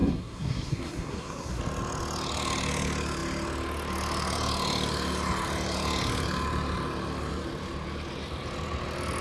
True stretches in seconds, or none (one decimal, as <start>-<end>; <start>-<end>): 1.6-9.2